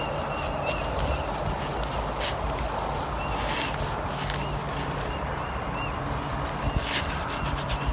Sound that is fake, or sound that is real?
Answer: real